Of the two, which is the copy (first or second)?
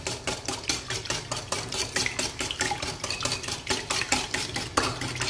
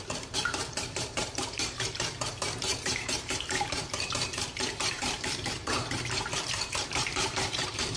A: second